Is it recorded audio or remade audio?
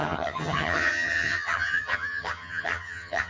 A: remade